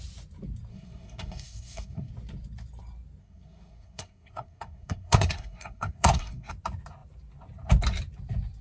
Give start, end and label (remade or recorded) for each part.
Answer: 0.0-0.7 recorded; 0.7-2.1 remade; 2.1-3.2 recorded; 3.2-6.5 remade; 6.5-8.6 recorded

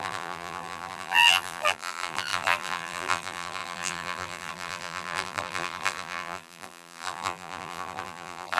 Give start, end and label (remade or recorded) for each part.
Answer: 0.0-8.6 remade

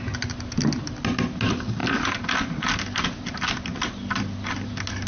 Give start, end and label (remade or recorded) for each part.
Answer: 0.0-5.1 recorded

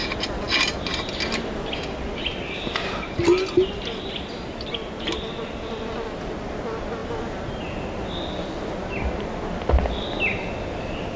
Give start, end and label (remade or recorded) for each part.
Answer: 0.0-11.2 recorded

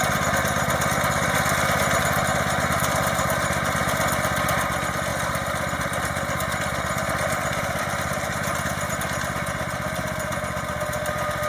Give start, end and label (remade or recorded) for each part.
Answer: 0.0-5.1 recorded; 5.1-8.9 remade; 8.9-11.5 recorded

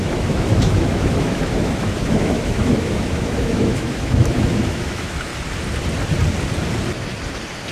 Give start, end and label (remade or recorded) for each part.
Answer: 0.0-5.3 remade; 5.3-7.7 recorded

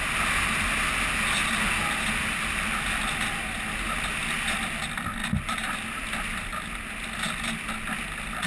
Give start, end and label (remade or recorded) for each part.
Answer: 0.0-5.2 recorded; 5.2-5.8 remade; 5.8-8.5 recorded

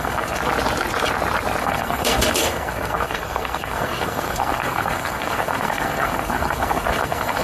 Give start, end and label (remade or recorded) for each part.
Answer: 0.0-0.4 remade; 0.4-1.6 recorded; 1.6-7.4 remade